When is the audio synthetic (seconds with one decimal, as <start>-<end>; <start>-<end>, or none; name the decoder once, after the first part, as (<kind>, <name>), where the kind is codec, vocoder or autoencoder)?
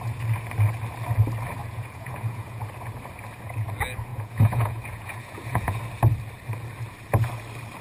1.6-2.6 (vocoder, Vocos); 4.1-5.8